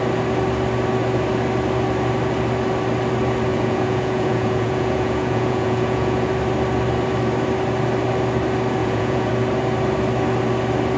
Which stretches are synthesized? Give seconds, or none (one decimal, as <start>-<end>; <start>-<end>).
3.5-6.3; 8.8-9.3